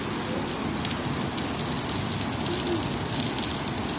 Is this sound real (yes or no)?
yes